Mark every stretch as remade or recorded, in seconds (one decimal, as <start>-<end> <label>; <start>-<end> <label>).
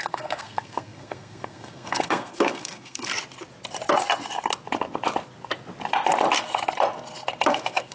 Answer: 0.0-3.1 remade; 3.1-7.5 recorded; 7.5-7.9 remade